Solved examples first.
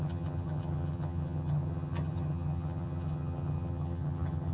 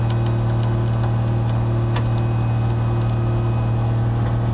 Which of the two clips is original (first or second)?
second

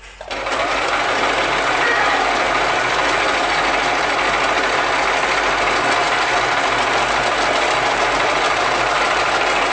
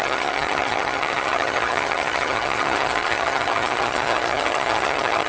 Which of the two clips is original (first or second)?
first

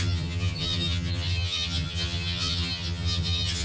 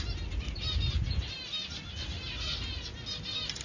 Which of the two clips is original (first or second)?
second